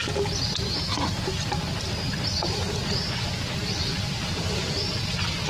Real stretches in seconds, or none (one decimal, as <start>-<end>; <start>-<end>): 0.0-5.5